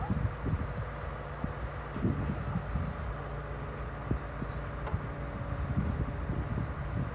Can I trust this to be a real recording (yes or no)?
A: yes